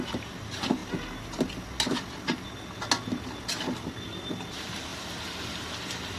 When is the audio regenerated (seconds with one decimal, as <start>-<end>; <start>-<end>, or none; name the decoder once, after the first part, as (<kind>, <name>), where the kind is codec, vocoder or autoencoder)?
0.0-0.8 (vocoder, BigVGAN v2); 4.5-4.9; 5.5-6.2